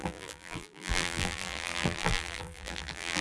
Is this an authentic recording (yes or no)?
no